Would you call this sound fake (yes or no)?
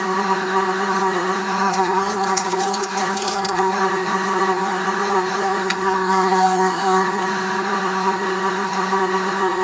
yes